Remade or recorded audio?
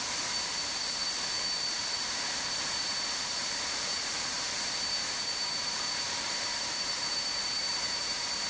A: remade